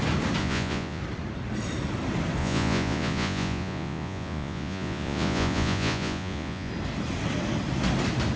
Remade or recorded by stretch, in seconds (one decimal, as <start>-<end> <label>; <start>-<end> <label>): 0.0-0.4 recorded; 0.4-1.0 remade; 1.0-2.4 recorded; 2.4-6.7 remade; 6.7-8.4 recorded